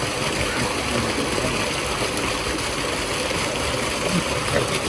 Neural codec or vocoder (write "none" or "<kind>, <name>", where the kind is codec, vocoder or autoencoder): none